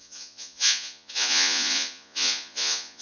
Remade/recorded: remade